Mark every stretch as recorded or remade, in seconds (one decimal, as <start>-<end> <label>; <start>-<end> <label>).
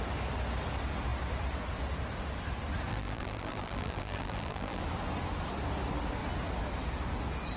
0.0-2.9 recorded; 2.9-4.8 remade; 4.8-7.6 recorded